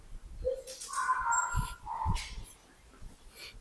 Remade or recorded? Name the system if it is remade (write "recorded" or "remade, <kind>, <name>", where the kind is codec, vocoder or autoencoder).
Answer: recorded